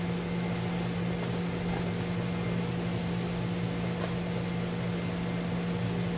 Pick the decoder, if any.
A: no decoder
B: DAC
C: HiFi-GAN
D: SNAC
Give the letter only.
A